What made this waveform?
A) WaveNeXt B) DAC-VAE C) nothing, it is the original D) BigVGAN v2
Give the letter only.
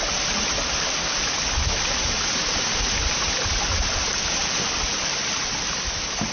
C